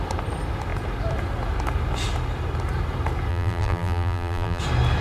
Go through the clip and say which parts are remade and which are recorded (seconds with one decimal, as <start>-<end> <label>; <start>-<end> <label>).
0.0-3.3 recorded; 3.3-4.6 remade; 4.6-5.0 recorded